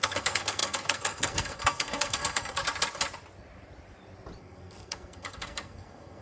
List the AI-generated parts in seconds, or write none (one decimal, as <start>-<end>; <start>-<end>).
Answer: 0.0-2.6; 4.4-6.2